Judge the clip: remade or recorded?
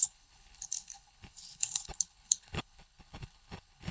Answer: remade